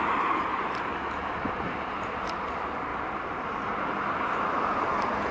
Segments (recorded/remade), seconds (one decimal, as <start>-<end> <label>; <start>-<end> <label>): 0.0-0.9 remade; 0.9-1.4 recorded; 1.4-2.9 remade; 2.9-4.5 recorded; 4.5-5.3 remade